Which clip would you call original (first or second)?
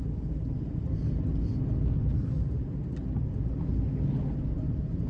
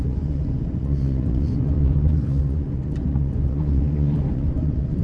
first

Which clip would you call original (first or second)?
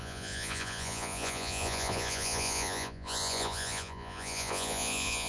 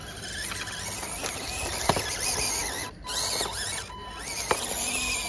second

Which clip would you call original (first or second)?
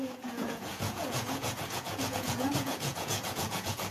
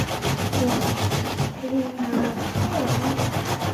second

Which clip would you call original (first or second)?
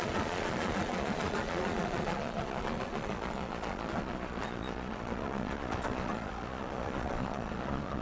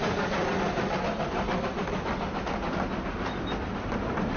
second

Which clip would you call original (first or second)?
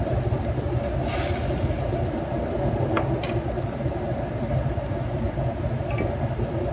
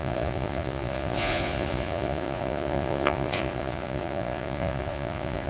first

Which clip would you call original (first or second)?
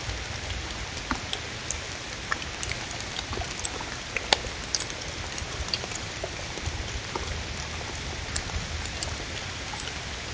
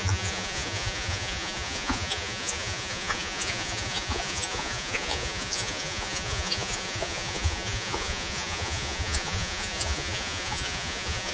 first